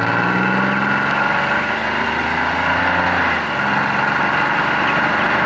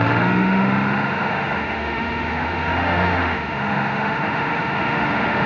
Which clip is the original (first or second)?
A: first